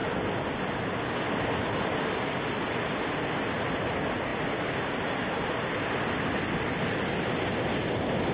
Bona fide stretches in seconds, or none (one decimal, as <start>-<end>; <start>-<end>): 0.0-8.3